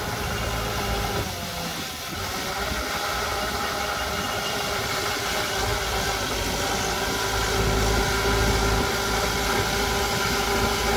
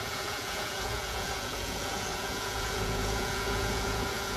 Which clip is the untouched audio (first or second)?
first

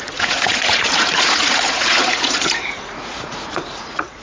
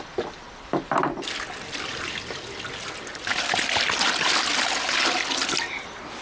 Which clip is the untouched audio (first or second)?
second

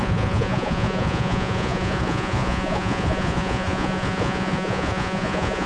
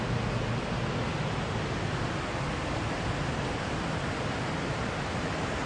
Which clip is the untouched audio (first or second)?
second